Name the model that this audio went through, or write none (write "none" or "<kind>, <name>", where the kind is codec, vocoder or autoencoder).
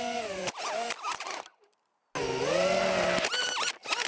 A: none